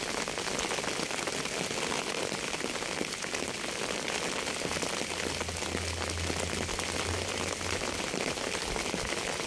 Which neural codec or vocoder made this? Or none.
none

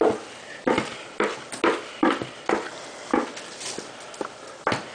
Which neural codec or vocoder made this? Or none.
none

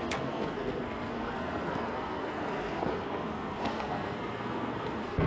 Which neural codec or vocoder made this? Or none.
codec, SNAC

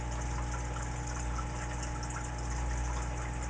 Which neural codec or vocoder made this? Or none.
none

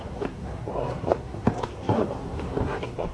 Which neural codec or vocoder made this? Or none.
codec, SNAC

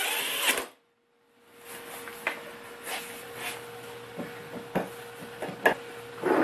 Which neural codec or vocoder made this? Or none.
none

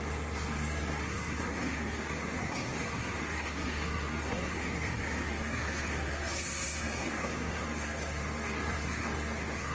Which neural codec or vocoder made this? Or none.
codec, SNAC